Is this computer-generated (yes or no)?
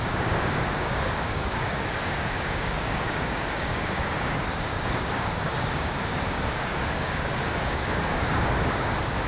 yes